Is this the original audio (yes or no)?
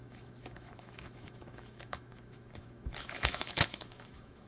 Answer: no